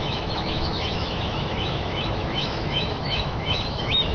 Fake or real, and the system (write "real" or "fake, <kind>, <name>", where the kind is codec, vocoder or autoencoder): fake, autoencoder, DAC-VAE